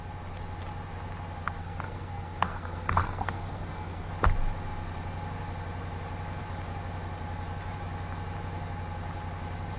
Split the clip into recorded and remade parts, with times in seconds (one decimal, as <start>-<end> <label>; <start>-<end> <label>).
0.0-1.6 recorded; 1.6-4.1 remade; 4.1-9.8 recorded